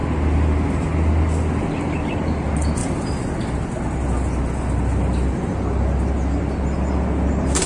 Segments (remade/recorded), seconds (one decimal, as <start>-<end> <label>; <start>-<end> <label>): 0.0-7.7 recorded